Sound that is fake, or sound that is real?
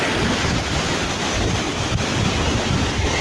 real